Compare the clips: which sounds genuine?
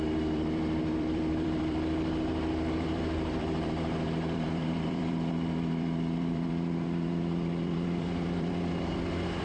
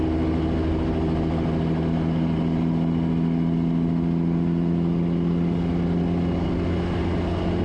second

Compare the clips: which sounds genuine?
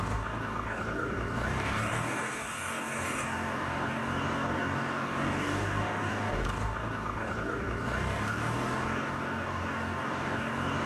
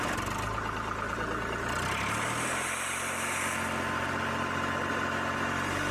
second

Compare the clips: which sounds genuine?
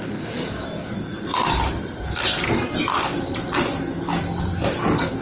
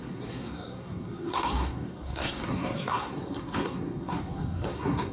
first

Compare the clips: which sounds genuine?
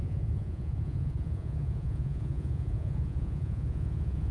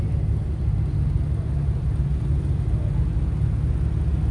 second